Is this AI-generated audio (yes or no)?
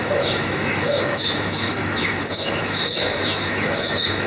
yes